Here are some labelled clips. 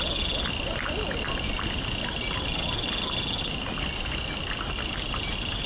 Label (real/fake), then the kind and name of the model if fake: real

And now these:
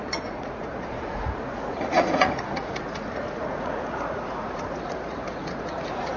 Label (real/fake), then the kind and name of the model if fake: fake, vocoder, Vocos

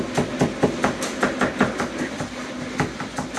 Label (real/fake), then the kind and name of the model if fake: real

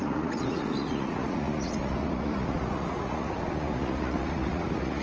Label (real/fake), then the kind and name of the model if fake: fake, vocoder, Vocos